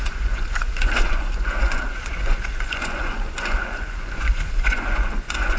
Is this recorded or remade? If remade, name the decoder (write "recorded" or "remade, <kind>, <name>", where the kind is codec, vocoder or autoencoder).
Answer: remade, vocoder, Vocos